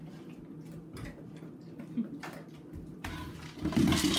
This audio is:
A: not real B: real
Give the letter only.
B